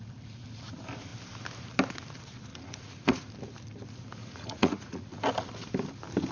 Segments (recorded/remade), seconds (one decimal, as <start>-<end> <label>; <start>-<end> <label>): 0.0-2.5 recorded; 2.5-3.3 remade; 3.3-4.2 recorded; 4.2-5.2 remade; 5.2-6.3 recorded